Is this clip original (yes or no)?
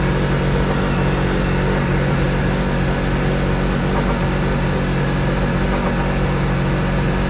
yes